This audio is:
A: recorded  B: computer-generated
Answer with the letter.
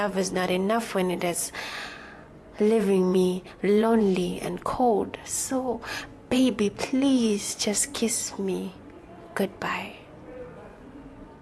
B